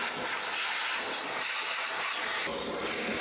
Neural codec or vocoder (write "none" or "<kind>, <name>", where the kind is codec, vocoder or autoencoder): none